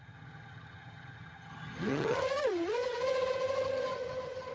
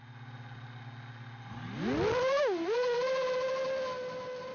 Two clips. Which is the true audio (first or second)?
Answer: second